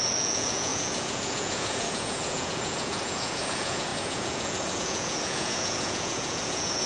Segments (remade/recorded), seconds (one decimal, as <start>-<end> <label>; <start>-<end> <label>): 0.0-6.9 remade